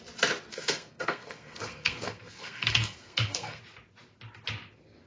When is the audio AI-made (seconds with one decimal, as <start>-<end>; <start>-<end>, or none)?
0.5-3.6